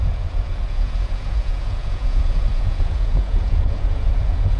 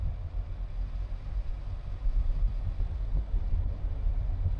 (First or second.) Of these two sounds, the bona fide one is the second